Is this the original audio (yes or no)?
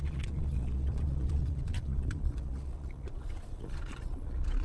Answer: no